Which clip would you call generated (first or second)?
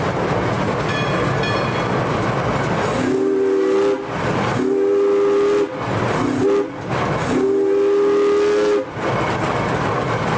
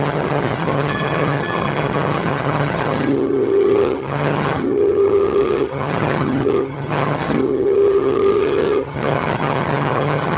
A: second